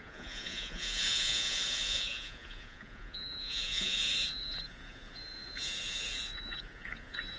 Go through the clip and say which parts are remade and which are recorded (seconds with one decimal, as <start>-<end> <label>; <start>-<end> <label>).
0.0-7.4 remade